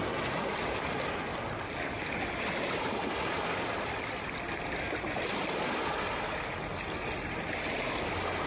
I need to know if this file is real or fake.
real